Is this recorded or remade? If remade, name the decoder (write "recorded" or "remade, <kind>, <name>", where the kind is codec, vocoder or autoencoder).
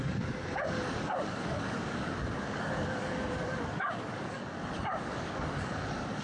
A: remade, codec, DAC